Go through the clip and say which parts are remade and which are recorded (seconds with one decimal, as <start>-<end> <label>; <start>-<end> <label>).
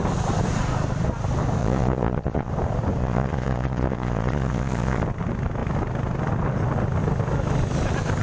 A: 0.0-1.6 recorded; 1.6-2.5 remade; 2.5-3.0 recorded; 3.0-5.0 remade; 5.0-8.2 recorded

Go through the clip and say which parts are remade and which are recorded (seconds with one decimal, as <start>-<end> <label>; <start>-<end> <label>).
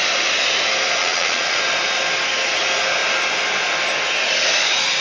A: 0.0-1.0 recorded; 1.0-1.6 remade; 1.6-5.0 recorded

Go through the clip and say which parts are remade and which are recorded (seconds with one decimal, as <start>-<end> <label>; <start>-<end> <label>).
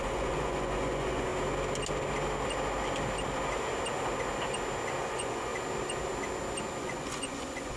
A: 0.0-1.3 remade; 1.3-5.0 recorded; 5.0-5.5 remade; 5.5-6.8 recorded; 6.8-7.8 remade